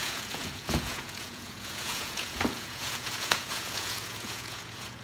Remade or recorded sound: remade